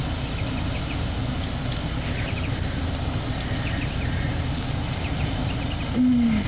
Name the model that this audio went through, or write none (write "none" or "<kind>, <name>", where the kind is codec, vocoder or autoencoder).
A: none